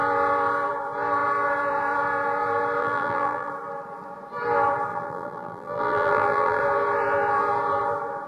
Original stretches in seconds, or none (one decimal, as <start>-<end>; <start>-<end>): 0.0-2.8; 3.5-4.9; 6.6-8.3